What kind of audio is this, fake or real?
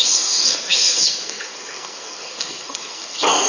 fake